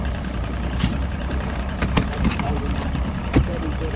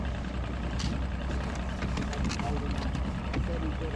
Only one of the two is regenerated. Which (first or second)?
first